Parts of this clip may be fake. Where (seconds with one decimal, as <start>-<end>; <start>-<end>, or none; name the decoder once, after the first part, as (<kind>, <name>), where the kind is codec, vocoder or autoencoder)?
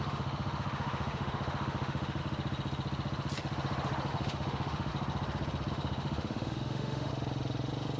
0.0-2.2 (autoencoder, DAC-VAE); 4.1-4.9; 5.7-7.1